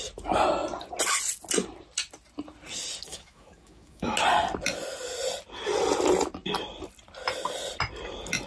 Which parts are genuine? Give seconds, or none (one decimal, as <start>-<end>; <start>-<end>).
0.0-3.1; 4.1-8.5